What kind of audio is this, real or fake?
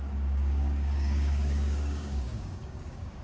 fake